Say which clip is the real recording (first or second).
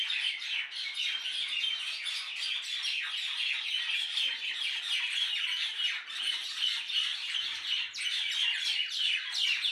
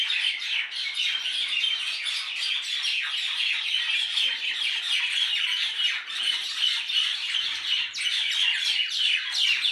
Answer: first